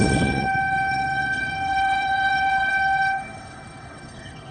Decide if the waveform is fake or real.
fake